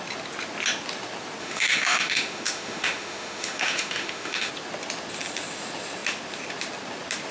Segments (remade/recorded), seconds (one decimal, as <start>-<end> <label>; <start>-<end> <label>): 0.0-1.4 recorded; 1.4-4.5 remade; 4.5-7.3 recorded